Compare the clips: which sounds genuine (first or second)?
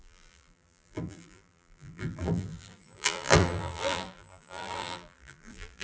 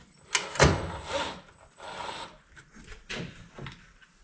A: second